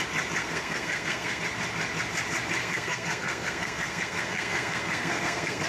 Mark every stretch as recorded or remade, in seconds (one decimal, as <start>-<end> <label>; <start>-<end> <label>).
0.0-0.4 recorded; 0.4-1.4 remade; 1.4-2.6 recorded; 2.6-5.7 remade